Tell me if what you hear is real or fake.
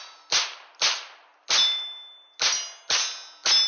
real